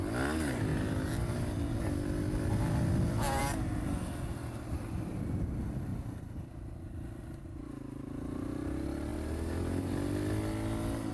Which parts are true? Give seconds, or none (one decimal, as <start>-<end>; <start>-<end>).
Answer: 0.0-9.1; 10.1-11.1